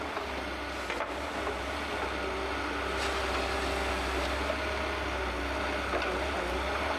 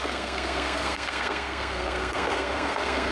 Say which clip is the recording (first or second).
first